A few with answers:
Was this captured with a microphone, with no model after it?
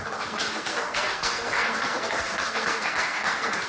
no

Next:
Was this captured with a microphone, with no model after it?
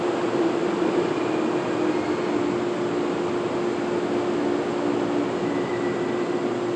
yes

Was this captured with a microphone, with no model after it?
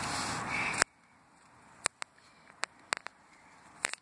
yes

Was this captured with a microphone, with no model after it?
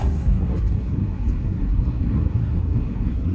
no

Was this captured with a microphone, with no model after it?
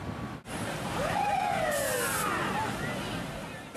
yes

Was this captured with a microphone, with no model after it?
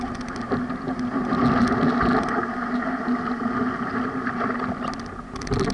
yes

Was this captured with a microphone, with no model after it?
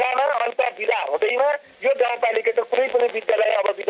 no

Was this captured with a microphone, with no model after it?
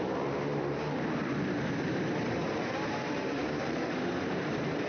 no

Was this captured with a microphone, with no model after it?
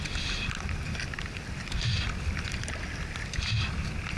yes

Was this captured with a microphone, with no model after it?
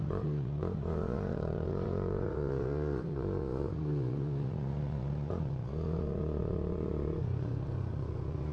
no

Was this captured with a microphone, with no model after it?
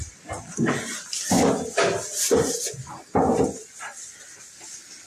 yes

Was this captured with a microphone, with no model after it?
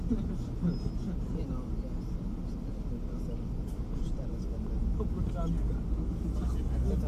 yes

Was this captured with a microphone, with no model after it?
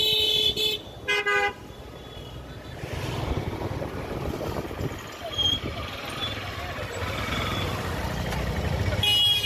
yes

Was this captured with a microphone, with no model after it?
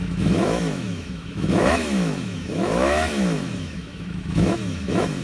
no